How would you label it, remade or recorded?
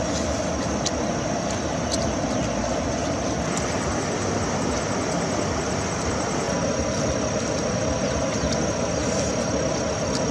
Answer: recorded